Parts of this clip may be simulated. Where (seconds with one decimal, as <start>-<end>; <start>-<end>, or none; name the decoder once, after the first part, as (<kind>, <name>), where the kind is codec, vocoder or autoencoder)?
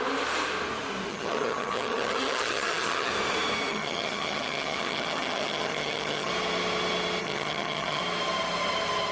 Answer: 1.1-3.1 (vocoder, HiFi-GAN); 3.7-6.3; 7.2-8.0